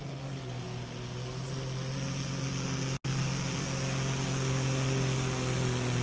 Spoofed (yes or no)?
no